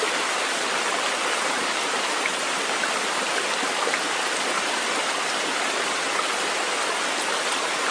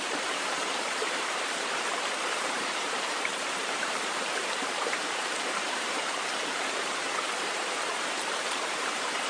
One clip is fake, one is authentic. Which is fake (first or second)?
second